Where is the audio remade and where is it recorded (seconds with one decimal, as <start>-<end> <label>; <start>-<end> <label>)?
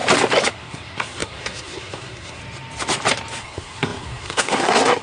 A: 0.0-0.5 recorded; 0.5-2.4 remade; 2.4-3.4 recorded; 3.4-5.0 remade